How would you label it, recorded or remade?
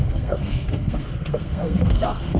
remade